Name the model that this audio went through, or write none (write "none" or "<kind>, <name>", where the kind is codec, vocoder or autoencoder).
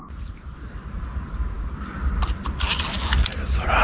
none